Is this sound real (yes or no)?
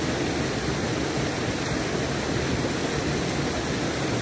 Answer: yes